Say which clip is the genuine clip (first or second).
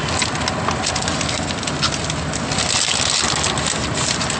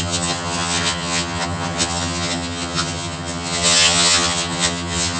first